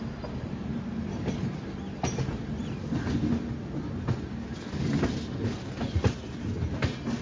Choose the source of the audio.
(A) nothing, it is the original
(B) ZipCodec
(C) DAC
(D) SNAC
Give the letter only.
A